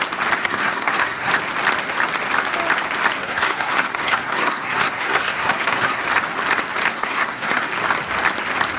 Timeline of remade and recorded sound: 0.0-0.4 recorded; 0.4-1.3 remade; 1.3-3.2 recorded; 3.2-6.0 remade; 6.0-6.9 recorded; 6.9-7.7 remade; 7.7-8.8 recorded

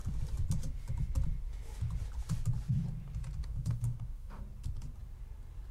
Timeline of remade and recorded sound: 0.0-3.4 recorded; 3.4-4.4 remade; 4.4-5.7 recorded